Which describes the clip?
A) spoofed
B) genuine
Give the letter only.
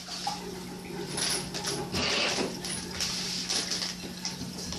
B